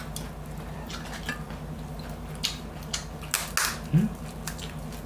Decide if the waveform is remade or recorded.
recorded